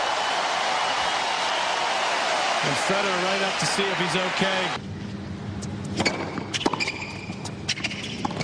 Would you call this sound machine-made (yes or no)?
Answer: no